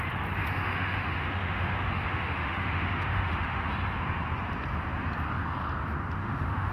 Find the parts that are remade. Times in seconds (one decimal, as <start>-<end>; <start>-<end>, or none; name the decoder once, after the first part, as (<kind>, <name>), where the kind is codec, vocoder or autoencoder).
0.4-3.7 (autoencoder, DAC-VAE); 6.2-6.7